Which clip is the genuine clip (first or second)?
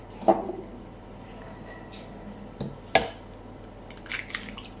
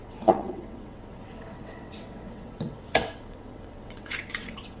first